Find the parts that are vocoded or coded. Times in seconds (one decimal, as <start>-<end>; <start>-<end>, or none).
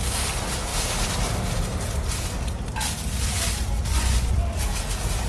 3.9-4.4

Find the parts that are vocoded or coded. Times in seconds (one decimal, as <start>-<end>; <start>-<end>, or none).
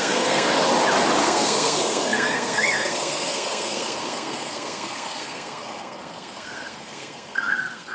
0.0-0.5; 1.2-7.9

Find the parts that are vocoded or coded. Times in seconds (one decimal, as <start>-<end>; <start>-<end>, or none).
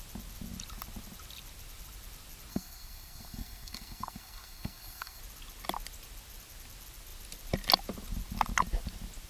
2.5-5.2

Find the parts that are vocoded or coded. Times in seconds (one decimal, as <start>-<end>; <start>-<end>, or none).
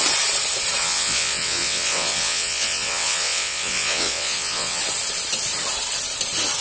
0.8-4.8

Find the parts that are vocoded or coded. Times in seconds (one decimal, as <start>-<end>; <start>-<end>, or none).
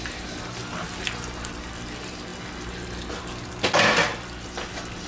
none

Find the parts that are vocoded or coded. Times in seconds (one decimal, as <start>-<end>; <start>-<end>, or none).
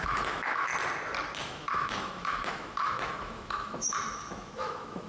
0.0-0.7; 1.4-5.1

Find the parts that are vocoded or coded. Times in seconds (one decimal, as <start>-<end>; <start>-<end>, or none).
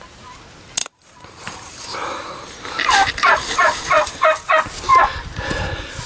0.8-4.5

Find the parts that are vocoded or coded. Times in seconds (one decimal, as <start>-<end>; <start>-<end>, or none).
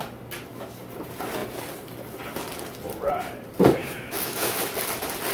3.8-4.6